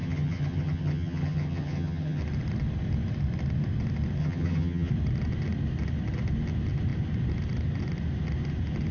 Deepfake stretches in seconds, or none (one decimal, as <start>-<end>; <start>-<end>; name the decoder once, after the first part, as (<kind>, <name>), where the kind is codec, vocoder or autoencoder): 0.0-2.2 (vocoder, HiFi-GAN); 4.2-4.9